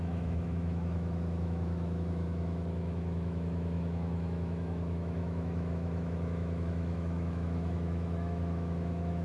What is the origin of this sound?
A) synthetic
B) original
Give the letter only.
A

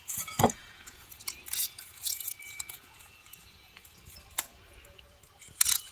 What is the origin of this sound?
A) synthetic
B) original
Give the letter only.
A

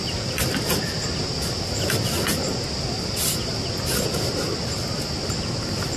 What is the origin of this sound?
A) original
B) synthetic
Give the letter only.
A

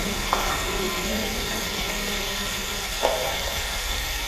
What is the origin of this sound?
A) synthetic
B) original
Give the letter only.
A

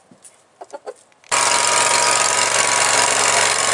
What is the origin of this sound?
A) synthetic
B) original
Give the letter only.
B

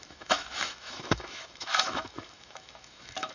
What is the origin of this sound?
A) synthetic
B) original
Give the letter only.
A